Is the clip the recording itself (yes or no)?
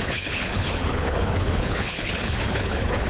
no